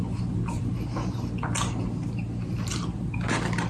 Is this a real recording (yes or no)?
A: yes